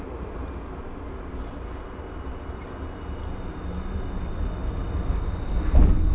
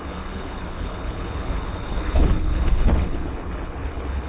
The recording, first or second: first